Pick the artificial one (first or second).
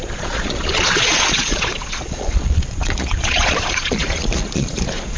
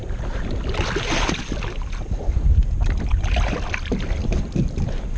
first